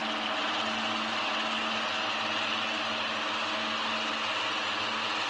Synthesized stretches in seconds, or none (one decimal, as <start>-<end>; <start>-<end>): none